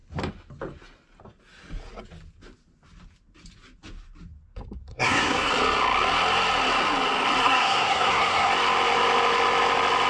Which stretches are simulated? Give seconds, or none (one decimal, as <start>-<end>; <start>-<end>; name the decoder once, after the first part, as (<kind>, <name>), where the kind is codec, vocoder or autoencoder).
4.9-5.5 (codec, SNAC); 7.4-8.5